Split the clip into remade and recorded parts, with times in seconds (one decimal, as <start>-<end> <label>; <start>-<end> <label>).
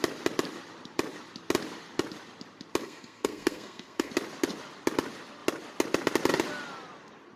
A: 0.0-2.8 recorded; 2.8-4.1 remade; 4.1-7.4 recorded